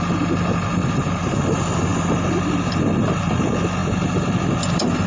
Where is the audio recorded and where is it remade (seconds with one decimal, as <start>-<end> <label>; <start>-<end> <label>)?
0.0-0.8 recorded; 0.8-1.4 remade; 1.4-5.1 recorded